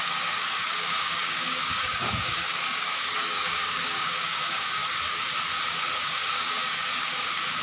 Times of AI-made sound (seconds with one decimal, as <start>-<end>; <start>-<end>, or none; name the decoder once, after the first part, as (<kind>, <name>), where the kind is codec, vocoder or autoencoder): 0.0-4.8 (codec, DAC); 5.8-7.6